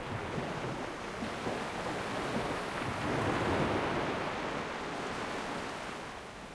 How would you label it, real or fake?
real